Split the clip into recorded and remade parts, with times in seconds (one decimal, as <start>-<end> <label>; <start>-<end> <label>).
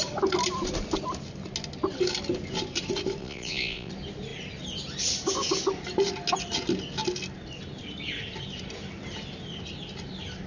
0.0-3.2 recorded; 3.2-3.9 remade; 3.9-10.5 recorded